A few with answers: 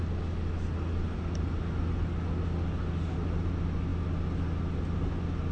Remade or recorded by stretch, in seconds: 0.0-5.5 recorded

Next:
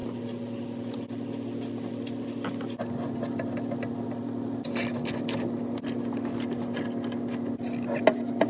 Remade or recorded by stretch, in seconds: 0.0-8.5 recorded